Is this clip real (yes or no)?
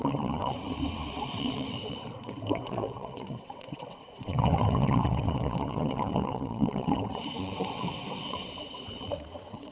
no